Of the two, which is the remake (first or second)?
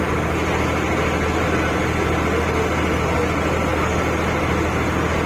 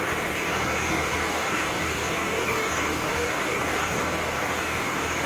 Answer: second